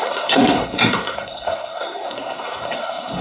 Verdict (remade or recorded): remade